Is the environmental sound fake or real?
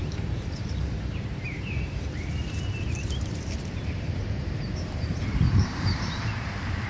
fake